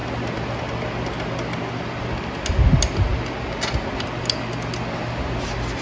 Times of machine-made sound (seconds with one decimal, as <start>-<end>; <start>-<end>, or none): none